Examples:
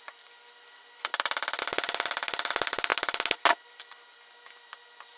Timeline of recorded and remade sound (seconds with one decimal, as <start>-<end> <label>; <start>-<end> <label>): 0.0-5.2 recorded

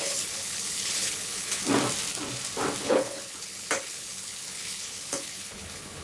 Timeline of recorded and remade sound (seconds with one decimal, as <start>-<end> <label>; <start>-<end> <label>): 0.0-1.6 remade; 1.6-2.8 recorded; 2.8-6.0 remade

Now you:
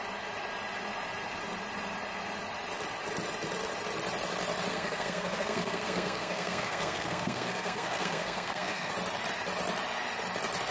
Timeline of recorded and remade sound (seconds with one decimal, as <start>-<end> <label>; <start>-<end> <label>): 0.0-4.7 recorded; 4.7-8.9 remade; 8.9-10.7 recorded